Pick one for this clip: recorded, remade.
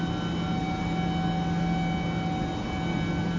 recorded